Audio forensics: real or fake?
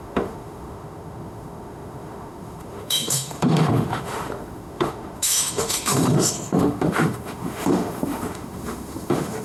fake